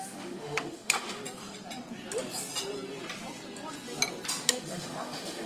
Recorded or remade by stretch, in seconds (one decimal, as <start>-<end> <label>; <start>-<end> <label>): 0.0-1.2 remade; 1.2-4.5 recorded; 4.5-5.5 remade